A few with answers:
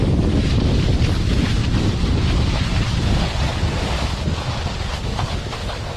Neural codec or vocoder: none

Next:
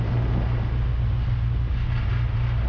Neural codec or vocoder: none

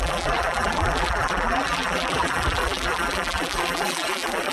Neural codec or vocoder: vocoder, BigVGAN v2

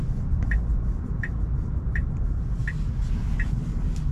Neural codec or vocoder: none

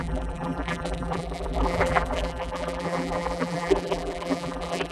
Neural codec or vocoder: vocoder, BigVGAN v2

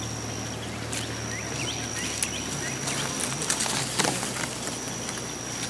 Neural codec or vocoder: none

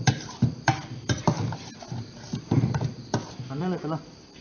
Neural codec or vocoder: vocoder, BigVGAN v2